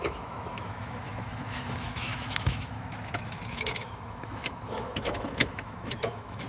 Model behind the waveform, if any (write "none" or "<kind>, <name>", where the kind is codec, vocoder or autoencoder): autoencoder, DAC-VAE